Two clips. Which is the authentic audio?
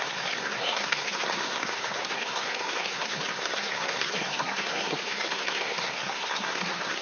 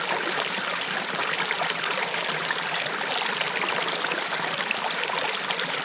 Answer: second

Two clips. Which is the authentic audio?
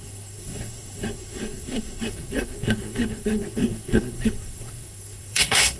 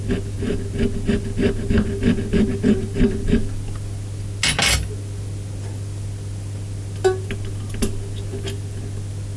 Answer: second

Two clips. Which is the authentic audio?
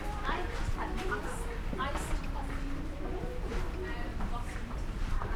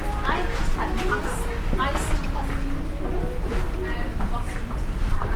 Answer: second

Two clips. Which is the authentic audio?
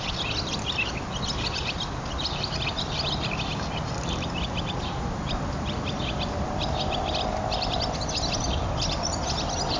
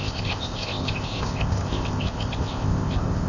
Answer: first